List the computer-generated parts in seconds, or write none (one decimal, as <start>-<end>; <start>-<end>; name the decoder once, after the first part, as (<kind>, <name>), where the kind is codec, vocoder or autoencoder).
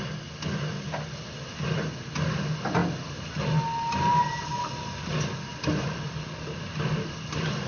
none